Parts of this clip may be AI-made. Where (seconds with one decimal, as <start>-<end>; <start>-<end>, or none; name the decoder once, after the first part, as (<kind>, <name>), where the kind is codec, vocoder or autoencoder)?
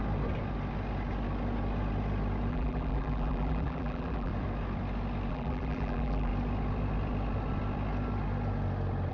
2.5-4.3 (vocoder, BigVGAN v2); 5.3-6.3